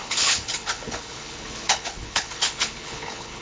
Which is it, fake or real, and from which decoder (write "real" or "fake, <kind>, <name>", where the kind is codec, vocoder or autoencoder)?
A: fake, codec, HILCodec